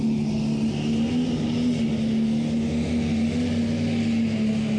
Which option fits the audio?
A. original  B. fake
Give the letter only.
A